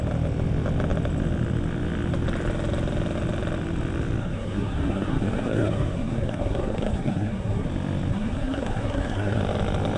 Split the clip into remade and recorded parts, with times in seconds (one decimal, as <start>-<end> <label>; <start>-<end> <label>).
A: 0.0-4.2 recorded; 4.2-7.7 remade; 7.7-8.1 recorded; 8.1-9.4 remade; 9.4-10.0 recorded